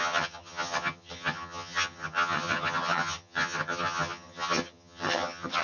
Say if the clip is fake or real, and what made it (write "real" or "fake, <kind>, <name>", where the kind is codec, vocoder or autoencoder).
fake, vocoder, HiFi-GAN